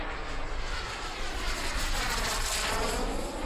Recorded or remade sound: recorded